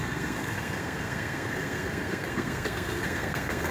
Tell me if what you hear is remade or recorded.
remade